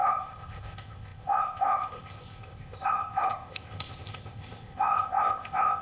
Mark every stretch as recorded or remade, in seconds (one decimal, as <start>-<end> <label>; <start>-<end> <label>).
0.0-5.8 remade